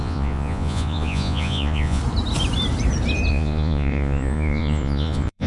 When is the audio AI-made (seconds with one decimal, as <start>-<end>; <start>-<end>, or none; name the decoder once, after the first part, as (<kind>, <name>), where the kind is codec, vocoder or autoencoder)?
0.0-2.0 (vocoder, Vocos); 3.3-5.5